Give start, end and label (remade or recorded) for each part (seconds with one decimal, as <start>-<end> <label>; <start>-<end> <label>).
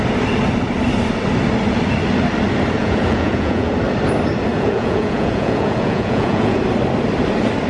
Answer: 0.0-2.8 recorded; 2.8-3.7 remade; 3.7-4.5 recorded; 4.5-6.6 remade; 6.6-7.7 recorded